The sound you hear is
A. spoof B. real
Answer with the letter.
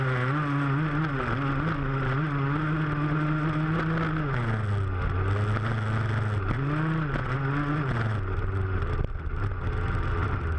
B